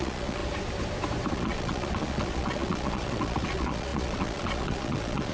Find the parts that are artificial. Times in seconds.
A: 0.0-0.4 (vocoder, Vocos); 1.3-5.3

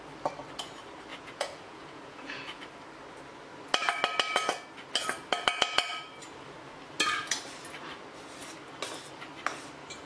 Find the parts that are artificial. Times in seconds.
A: 1.1-2.6 (vocoder, Vocos)

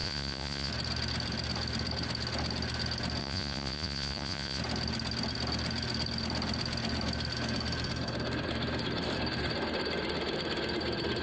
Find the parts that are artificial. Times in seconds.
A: 0.0-0.7 (vocoder, Vocos); 3.2-4.6